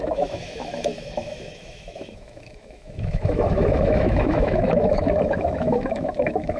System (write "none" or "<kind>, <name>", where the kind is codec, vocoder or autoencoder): autoencoder, DAC-VAE